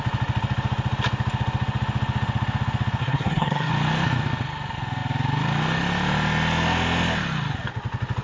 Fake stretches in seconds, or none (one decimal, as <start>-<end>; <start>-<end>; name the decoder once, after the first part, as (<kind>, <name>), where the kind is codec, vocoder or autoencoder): 3.0-3.7 (codec, SNAC)